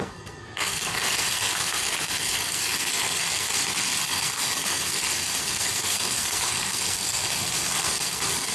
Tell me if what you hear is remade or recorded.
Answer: remade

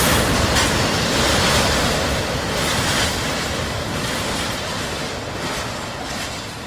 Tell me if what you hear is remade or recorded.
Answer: recorded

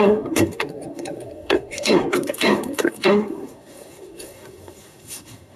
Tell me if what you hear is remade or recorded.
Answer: remade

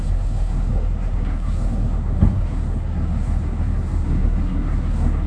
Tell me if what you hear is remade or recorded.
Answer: remade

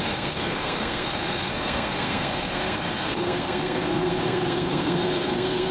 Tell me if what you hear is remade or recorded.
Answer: remade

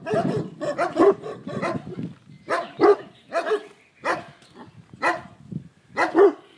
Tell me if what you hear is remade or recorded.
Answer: recorded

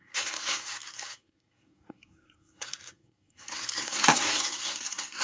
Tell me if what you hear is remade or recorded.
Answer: remade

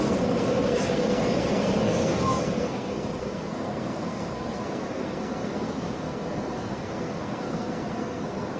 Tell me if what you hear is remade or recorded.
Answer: remade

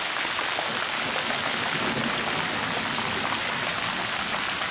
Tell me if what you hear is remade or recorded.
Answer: recorded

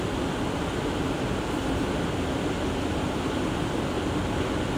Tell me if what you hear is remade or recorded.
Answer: recorded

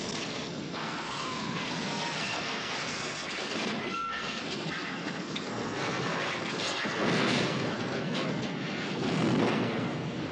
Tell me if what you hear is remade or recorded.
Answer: remade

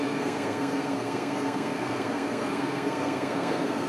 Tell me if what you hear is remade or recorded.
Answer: remade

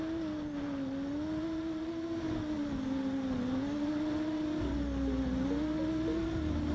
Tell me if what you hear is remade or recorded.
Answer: recorded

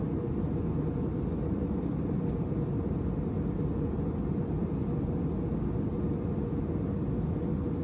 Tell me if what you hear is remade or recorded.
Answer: recorded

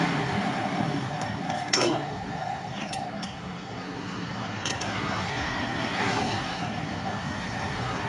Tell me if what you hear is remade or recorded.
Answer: remade